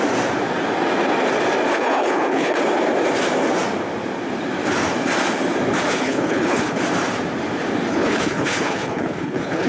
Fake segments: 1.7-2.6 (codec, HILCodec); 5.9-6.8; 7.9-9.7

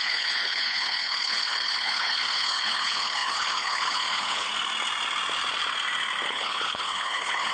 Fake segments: 0.0-4.5 (codec, HILCodec); 6.3-7.5

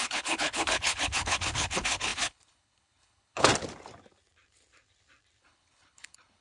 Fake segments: 0.0-3.5 (codec, HILCodec); 5.4-6.4